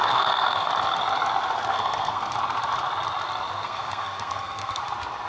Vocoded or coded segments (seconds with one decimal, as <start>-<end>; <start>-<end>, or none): 0.0-0.7; 1.7-2.3; 3.5-4.8